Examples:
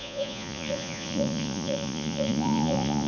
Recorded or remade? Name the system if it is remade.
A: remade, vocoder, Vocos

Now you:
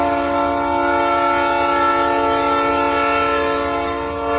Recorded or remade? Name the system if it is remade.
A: recorded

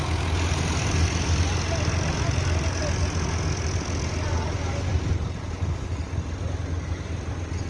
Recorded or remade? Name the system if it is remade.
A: recorded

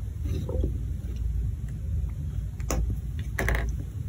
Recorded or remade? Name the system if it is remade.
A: recorded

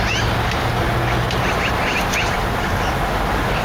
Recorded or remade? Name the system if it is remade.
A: recorded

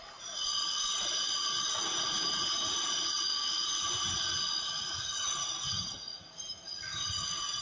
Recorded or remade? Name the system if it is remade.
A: remade, vocoder, Vocos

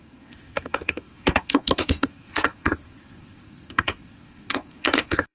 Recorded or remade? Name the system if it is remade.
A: remade, codec, SNAC